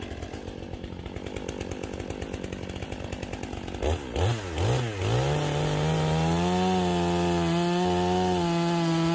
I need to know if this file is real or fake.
real